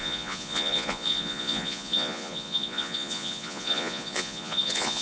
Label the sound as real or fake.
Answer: fake